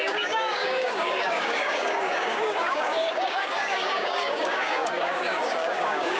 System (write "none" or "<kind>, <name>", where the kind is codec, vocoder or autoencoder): codec, DAC